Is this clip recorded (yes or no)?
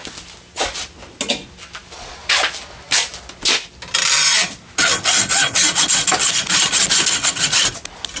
yes